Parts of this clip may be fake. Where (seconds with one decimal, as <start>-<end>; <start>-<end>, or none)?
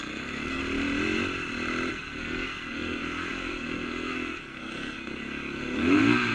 0.0-0.6; 1.9-6.3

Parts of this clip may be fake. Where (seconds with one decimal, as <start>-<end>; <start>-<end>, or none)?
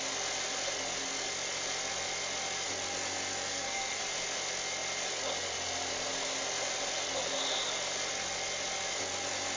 3.5-4.0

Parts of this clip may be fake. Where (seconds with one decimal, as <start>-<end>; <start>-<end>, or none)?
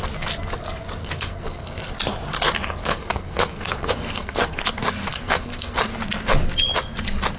1.0-1.9; 2.8-4.6; 5.1-5.8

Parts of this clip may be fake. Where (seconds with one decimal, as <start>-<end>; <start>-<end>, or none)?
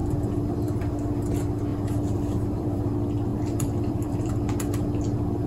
0.0-0.8; 1.7-2.9; 3.3-4.3